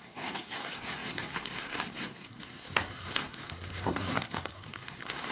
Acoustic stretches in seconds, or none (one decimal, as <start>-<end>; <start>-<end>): none